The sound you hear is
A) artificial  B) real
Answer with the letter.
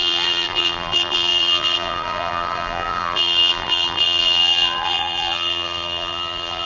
A